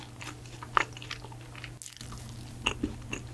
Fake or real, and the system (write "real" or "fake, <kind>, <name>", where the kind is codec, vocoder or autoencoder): real